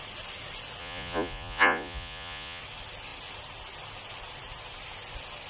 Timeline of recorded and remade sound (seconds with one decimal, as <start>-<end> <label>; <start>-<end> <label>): 0.0-0.8 recorded; 0.8-2.6 remade; 2.6-5.5 recorded